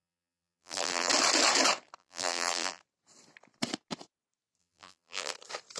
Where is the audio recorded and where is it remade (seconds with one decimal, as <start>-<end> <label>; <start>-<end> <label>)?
0.0-1.1 remade; 1.1-2.0 recorded; 2.0-2.8 remade; 2.8-4.6 recorded; 4.6-5.3 remade; 5.3-5.8 recorded